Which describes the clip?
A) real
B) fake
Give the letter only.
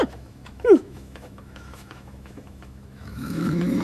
B